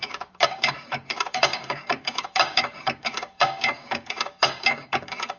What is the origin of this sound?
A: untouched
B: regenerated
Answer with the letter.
B